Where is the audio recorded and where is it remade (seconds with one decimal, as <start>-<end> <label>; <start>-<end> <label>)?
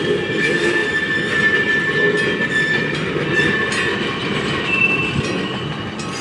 0.0-4.2 recorded; 4.2-4.8 remade; 4.8-6.2 recorded